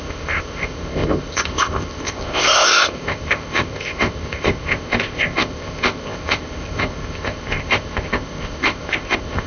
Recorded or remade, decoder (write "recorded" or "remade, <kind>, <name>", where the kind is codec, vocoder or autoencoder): remade, codec, ZipCodec